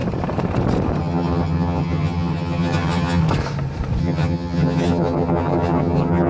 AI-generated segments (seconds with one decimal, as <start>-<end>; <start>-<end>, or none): 1.0-3.2; 4.0-6.3